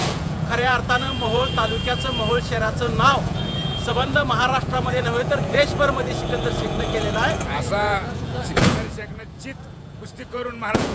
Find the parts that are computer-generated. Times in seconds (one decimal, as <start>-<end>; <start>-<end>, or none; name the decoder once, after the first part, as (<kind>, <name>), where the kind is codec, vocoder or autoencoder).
0.0-10.9 (vocoder, Vocos)